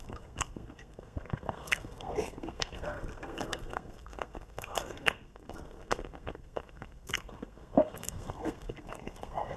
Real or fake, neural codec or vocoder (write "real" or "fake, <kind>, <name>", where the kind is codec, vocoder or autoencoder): fake, codec, SNAC